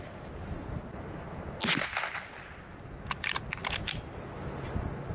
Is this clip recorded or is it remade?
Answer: recorded